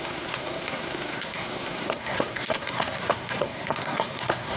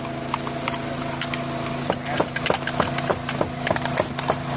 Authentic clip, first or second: second